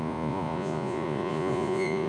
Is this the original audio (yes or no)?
no